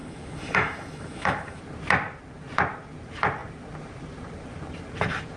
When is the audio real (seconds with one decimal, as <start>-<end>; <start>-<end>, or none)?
1.6-5.4